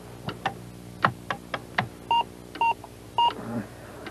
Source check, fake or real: real